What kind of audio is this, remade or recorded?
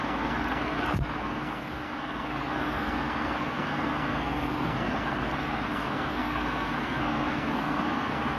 remade